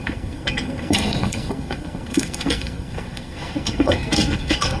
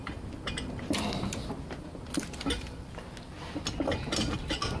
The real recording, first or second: second